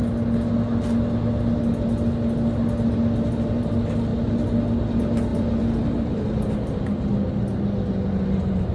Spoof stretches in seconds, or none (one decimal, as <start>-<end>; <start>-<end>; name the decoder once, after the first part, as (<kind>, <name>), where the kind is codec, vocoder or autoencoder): 4.1-4.6 (vocoder, BigVGAN v2); 5.3-6.2